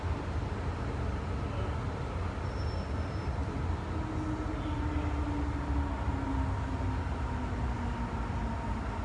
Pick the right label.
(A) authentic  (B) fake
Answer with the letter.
A